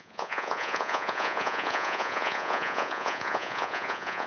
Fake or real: fake